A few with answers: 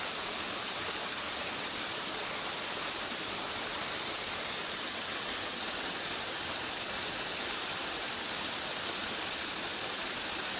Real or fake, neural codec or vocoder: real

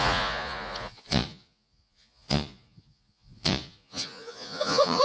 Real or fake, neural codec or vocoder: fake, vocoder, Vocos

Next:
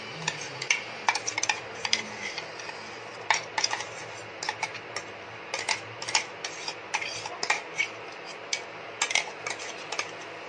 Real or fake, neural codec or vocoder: real